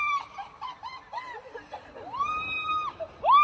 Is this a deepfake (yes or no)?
yes